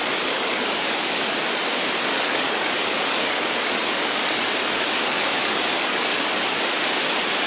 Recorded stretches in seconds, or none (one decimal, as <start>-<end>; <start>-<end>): 1.4-2.1; 6.6-7.5